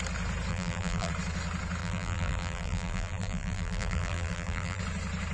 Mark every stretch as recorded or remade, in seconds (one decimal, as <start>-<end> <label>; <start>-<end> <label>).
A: 0.0-0.5 recorded; 0.5-1.1 remade; 1.1-1.8 recorded; 1.8-4.8 remade; 4.8-5.3 recorded